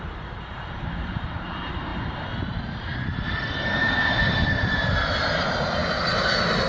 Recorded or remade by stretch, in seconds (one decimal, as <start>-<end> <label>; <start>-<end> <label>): 0.0-1.9 remade; 1.9-2.4 recorded; 2.4-2.9 remade; 2.9-4.5 recorded; 4.5-5.8 remade; 5.8-6.7 recorded